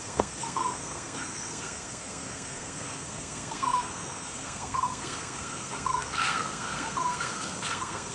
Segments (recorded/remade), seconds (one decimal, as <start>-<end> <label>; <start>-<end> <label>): 0.0-8.1 remade